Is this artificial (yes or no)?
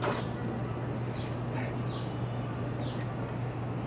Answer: no